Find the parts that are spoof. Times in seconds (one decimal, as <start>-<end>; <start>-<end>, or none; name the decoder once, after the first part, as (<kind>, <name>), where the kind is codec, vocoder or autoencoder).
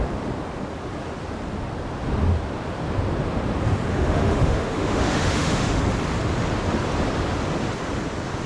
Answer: 3.9-5.8 (autoencoder, DAC-VAE)